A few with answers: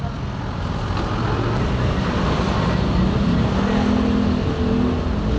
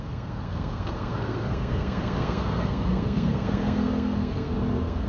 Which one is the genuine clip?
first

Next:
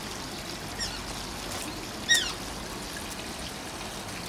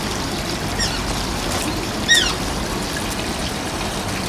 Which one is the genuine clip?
first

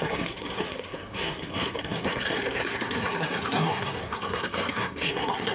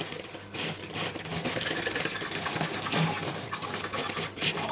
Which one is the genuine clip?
second